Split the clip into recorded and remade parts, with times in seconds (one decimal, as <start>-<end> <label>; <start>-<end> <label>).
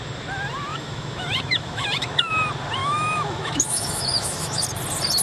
0.0-0.7 recorded; 0.7-2.3 remade; 2.3-2.8 recorded; 2.8-4.6 remade; 4.6-5.2 recorded